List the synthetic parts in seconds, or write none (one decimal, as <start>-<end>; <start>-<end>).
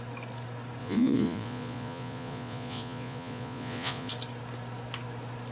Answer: 0.8-4.1